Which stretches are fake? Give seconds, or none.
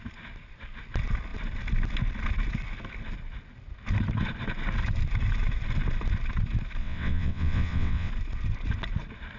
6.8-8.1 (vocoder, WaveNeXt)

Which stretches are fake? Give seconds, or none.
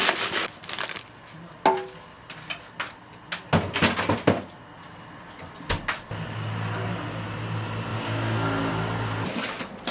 none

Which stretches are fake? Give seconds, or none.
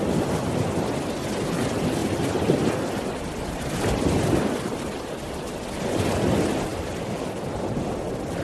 none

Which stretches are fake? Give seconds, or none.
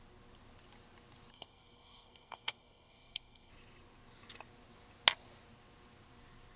1.3-3.5 (codec, SNAC)